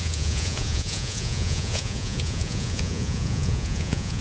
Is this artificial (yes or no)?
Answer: yes